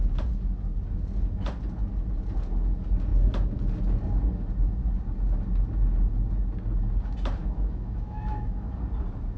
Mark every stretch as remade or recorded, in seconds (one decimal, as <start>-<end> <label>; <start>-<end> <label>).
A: 0.0-7.4 recorded; 7.4-8.8 remade; 8.8-9.4 recorded